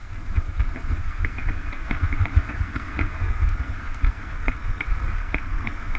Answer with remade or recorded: remade